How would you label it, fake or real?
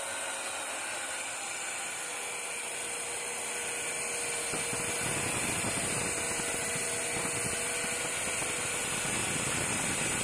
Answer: real